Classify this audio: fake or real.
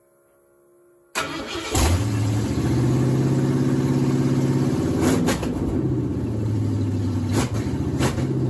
real